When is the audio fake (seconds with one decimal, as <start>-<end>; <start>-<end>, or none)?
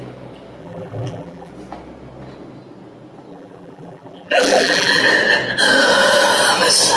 0.6-1.5; 3.3-5.0